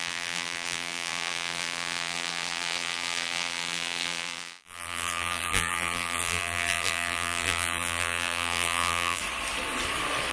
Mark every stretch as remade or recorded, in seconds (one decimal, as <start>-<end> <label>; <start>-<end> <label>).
0.0-9.2 remade; 9.2-10.3 recorded